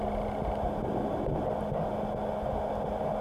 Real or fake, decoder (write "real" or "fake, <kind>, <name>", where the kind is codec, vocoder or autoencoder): real